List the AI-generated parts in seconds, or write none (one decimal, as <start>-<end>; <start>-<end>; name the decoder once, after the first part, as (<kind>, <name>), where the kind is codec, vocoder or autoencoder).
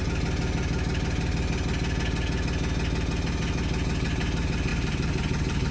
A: 4.7-5.7 (vocoder, BigVGAN v2)